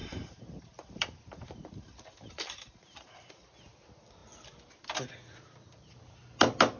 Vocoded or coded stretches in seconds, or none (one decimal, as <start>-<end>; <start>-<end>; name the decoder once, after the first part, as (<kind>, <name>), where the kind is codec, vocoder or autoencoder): 0.0-3.3 (vocoder, BigVGAN v2)